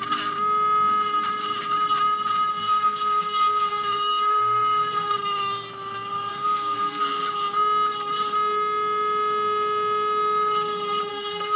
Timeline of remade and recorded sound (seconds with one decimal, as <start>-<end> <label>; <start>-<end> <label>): 0.0-2.6 recorded; 2.6-5.2 remade; 5.2-6.3 recorded; 6.3-7.0 remade; 7.0-11.1 recorded; 11.1-11.6 remade